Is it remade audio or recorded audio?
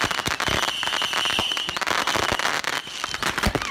recorded